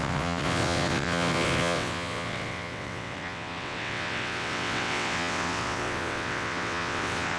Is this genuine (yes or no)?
no